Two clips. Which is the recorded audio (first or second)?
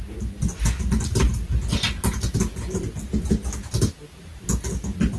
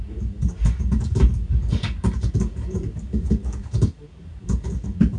first